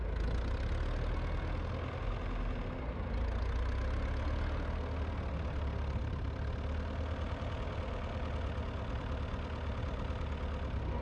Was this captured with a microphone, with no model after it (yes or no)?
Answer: yes